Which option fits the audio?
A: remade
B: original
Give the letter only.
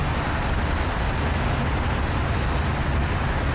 B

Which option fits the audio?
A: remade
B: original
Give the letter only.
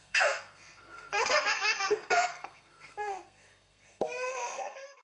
A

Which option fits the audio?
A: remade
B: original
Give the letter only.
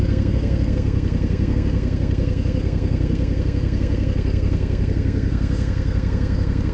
A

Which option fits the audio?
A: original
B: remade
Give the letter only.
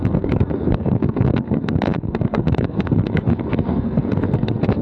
B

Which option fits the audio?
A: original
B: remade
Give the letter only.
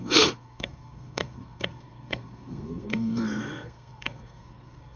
B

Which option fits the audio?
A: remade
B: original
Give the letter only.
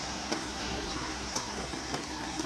A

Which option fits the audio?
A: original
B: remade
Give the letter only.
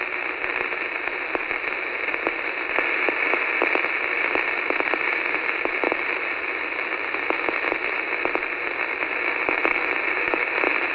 A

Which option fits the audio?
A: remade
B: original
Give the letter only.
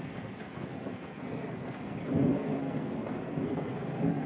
A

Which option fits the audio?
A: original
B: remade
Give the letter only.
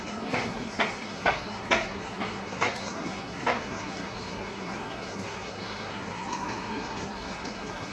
B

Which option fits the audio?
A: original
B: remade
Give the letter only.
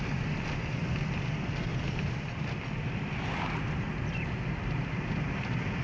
A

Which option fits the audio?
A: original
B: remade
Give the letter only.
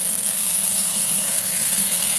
B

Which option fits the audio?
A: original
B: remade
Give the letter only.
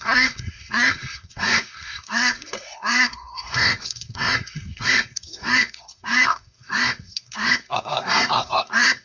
B